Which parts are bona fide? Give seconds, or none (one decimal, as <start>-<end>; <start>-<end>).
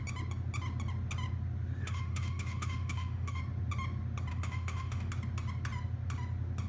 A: 0.0-1.8; 3.4-4.3; 5.1-6.7